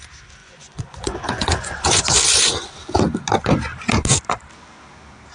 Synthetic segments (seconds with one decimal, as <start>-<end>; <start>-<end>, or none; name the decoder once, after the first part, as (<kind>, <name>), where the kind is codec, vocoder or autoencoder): 0.4-2.0 (vocoder, Vocos)